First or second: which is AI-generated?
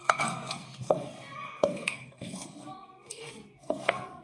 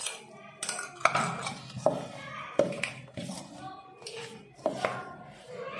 first